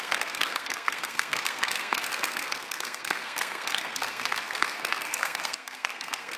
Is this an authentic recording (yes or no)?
no